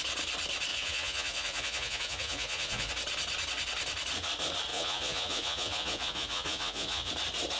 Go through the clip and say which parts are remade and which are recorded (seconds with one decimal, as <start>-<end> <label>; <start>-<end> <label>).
0.0-0.7 recorded; 0.7-2.9 remade; 2.9-4.7 recorded; 4.7-7.1 remade; 7.1-7.6 recorded